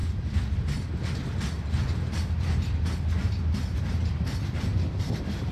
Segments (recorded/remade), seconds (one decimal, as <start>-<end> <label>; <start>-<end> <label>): 0.0-5.5 recorded